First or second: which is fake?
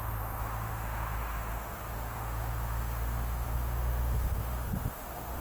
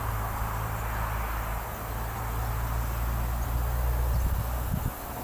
first